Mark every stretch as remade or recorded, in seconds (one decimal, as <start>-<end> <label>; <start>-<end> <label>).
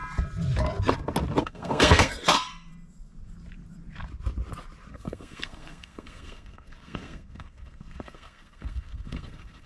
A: 0.0-1.4 recorded; 1.4-2.7 remade; 2.7-4.9 recorded; 4.9-9.7 remade